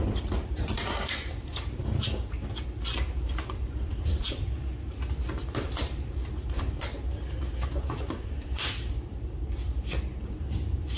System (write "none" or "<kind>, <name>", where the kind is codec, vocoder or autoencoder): vocoder, BigVGAN v2